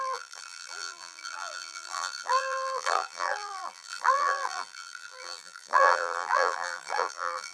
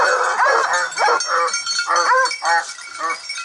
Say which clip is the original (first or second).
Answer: second